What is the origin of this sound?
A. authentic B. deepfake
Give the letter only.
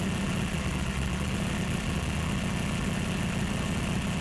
A